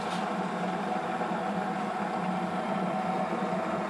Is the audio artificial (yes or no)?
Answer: no